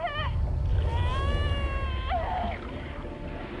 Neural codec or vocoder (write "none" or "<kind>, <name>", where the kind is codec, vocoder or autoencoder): none